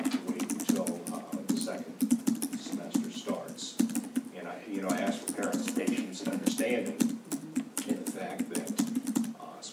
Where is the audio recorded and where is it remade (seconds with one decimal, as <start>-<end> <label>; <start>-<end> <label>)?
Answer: 0.0-5.6 recorded; 5.6-6.5 remade; 6.5-9.7 recorded